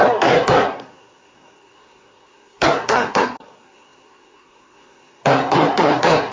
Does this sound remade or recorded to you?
remade